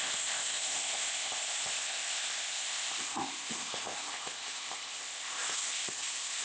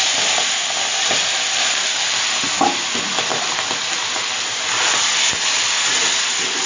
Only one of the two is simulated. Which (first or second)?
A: first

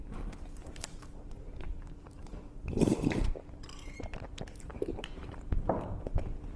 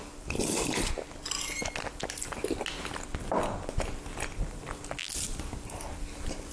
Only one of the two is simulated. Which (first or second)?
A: first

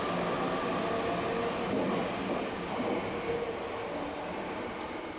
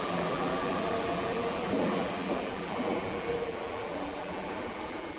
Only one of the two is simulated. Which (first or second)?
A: second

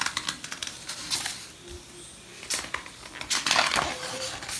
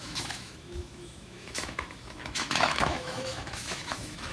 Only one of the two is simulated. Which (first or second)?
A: second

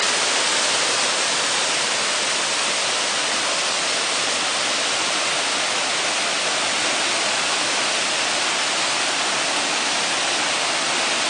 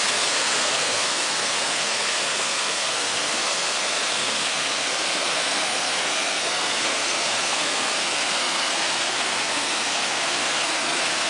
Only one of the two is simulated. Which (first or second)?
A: second